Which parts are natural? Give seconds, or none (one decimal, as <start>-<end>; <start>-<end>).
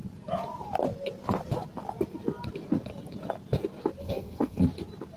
0.0-4.0; 4.6-5.2